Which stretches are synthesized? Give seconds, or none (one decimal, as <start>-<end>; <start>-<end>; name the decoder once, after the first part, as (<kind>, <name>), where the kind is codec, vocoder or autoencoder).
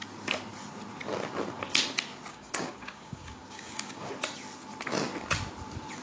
2.3-4.1 (codec, DAC)